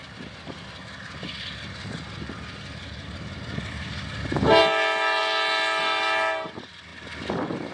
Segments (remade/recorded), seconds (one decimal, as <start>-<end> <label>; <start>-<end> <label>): 0.0-7.7 recorded